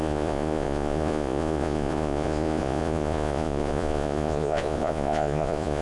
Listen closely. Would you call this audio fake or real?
fake